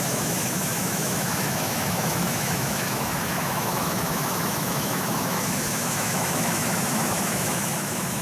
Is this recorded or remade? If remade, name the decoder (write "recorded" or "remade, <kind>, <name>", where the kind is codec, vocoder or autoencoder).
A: remade, autoencoder, DAC-VAE